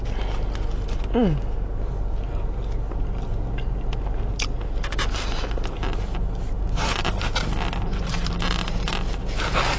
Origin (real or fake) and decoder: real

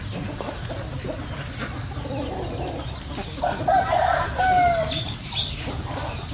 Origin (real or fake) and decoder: real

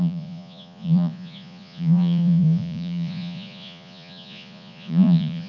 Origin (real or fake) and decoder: fake, vocoder, Vocos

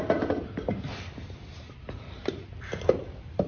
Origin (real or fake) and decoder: real